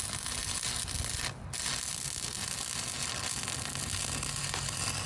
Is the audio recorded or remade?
recorded